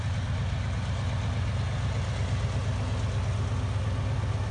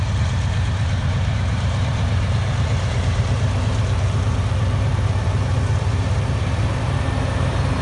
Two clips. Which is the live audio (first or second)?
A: first